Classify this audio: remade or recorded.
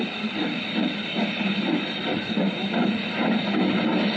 recorded